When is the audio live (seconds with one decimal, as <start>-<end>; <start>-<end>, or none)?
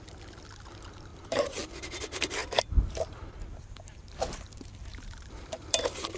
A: 0.0-1.1; 1.7-2.4